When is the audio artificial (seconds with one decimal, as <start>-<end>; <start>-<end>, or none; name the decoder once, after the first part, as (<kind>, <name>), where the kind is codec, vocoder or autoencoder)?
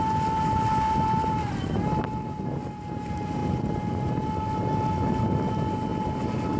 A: none